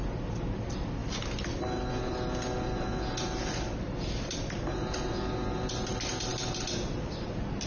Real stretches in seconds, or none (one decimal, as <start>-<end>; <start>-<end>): 0.0-7.7